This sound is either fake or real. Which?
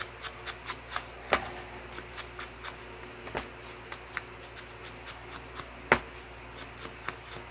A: real